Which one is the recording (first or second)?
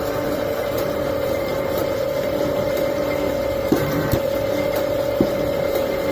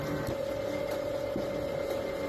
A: second